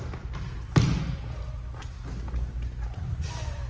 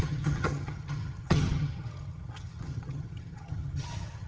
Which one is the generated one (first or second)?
second